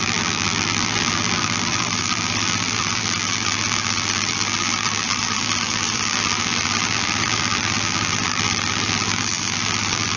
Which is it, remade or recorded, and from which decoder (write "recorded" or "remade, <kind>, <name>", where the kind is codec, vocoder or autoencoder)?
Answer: remade, vocoder, BigVGAN v2